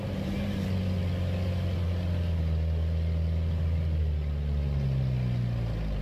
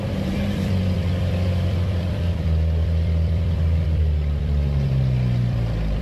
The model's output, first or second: second